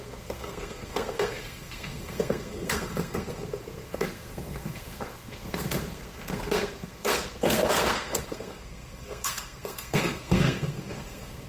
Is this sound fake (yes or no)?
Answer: yes